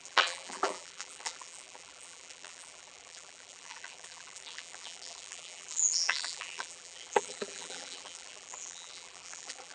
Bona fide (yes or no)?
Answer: no